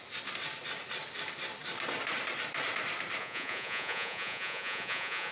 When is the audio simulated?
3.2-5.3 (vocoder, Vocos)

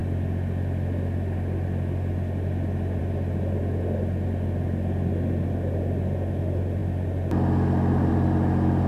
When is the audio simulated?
none

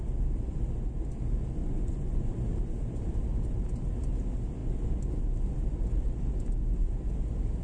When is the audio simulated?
1.6-2.3 (vocoder, Vocos)

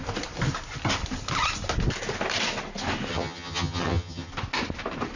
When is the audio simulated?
3.1-4.3 (vocoder, HiFi-GAN)

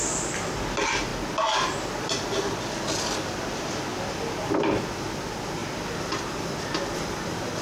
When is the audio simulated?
none

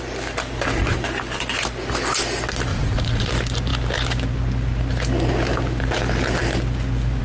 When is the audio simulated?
2.7-3.3 (vocoder, Vocos)

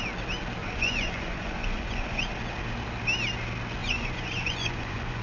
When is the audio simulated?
0.6-2.3 (vocoder, Vocos); 3.8-5.2